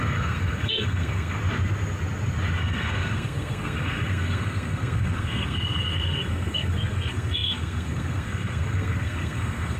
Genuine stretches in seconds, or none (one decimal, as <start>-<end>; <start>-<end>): 1.4-2.6